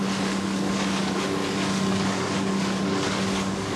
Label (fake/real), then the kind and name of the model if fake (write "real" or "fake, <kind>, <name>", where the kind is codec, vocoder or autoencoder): fake, codec, DAC